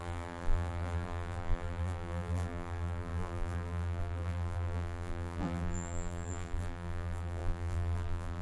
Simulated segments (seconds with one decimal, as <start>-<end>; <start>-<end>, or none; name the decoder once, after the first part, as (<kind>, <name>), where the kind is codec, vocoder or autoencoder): 0.0-8.4 (vocoder, BigVGAN v2)